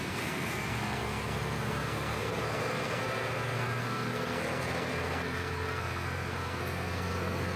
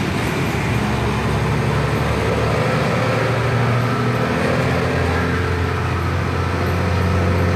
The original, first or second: second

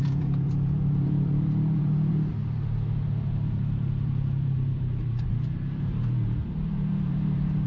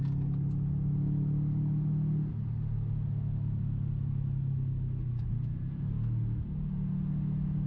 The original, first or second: second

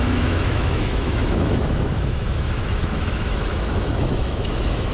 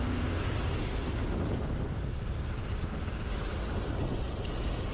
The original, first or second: second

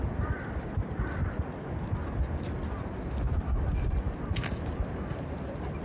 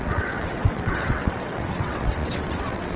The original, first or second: first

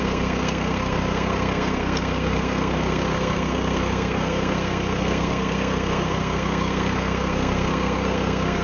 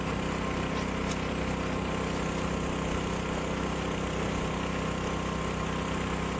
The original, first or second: second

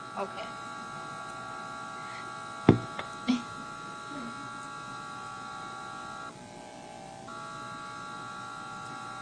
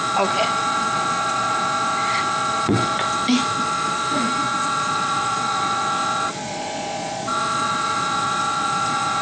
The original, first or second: first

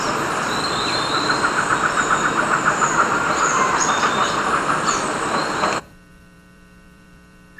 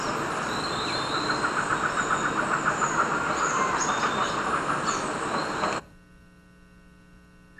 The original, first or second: second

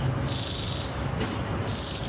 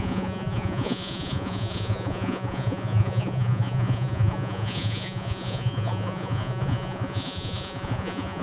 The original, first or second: first